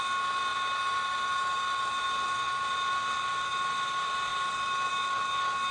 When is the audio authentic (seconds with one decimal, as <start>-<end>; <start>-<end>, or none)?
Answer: 0.0-5.7